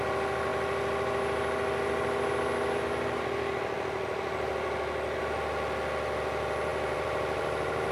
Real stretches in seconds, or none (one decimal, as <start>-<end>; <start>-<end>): 0.0-6.7